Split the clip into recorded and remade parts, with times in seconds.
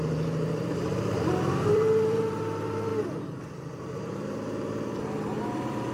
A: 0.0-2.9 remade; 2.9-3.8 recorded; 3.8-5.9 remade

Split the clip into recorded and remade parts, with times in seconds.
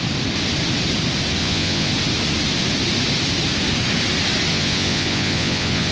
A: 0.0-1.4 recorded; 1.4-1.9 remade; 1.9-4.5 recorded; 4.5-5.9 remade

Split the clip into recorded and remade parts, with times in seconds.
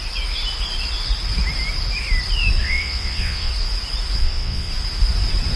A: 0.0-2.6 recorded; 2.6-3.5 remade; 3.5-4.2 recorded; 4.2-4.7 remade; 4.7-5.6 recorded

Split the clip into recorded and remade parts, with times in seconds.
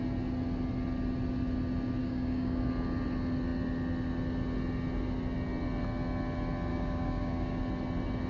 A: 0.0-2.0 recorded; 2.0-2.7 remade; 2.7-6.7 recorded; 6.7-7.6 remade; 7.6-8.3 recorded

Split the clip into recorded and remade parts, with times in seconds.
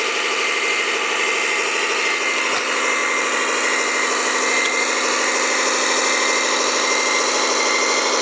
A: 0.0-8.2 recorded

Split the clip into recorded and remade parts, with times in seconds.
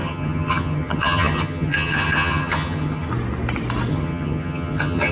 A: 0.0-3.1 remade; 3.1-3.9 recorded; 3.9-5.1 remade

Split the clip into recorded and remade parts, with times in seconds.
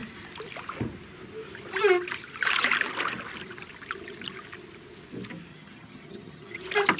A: 0.0-5.5 recorded; 5.5-6.6 remade; 6.6-7.0 recorded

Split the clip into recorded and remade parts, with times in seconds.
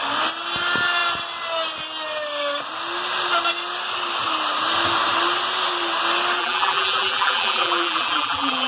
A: 0.0-6.4 recorded; 6.4-8.7 remade